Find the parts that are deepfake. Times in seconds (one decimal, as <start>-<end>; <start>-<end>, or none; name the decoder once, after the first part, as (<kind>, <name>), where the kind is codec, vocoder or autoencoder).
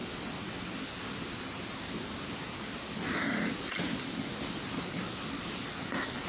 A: none